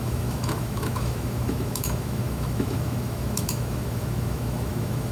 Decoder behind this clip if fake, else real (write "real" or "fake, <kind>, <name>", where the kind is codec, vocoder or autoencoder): fake, autoencoder, DAC-VAE